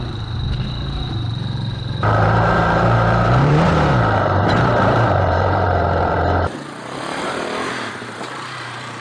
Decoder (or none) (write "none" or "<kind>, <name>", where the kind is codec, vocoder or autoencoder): vocoder, BigVGAN v2